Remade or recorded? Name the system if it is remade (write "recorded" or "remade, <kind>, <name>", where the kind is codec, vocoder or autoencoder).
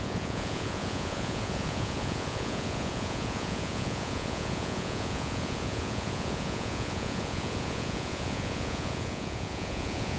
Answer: remade, vocoder, Vocos